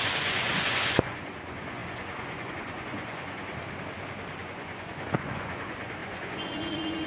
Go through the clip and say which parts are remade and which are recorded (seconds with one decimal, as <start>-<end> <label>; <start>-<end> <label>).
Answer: 0.0-3.5 remade; 3.5-4.4 recorded; 4.4-7.1 remade